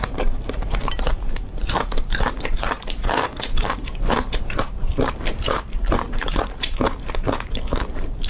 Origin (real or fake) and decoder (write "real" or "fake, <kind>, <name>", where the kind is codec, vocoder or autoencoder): fake, vocoder, BigVGAN v2